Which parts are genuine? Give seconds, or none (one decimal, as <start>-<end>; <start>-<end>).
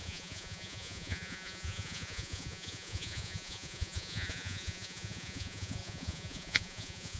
none